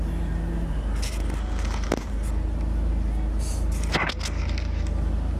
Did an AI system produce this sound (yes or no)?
no